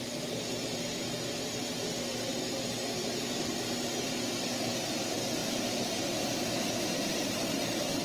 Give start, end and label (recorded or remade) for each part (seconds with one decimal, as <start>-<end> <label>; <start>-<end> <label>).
0.0-5.4 recorded; 5.4-8.0 remade